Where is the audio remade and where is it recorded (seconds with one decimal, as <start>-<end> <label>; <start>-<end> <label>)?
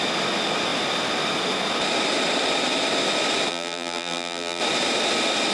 0.0-3.5 recorded; 3.5-4.6 remade; 4.6-5.5 recorded